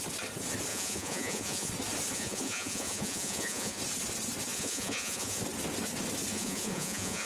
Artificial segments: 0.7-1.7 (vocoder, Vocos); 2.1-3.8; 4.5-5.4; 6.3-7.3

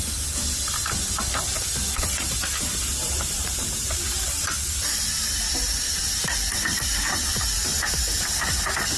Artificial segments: 2.4-4.4 (vocoder, BigVGAN v2); 7.7-8.2